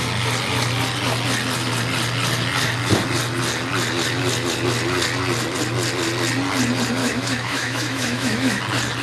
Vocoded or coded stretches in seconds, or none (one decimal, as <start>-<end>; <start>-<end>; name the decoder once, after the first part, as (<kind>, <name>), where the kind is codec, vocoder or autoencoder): 7.0-8.6 (autoencoder, DAC-VAE)